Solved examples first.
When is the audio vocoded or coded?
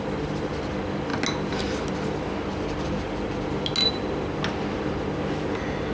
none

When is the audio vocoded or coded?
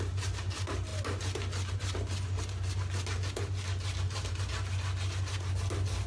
none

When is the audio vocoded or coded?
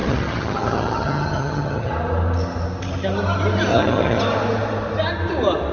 0.0-1.9 (vocoder, HiFi-GAN); 3.7-4.2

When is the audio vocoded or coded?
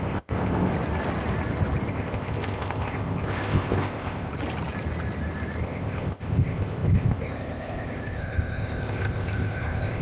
0.0-0.7 (codec, ZipCodec); 1.9-4.3; 5.6-10.0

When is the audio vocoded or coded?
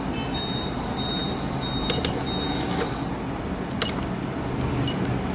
none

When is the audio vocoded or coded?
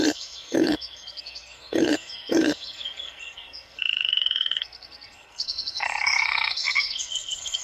0.0-7.6 (codec, SNAC)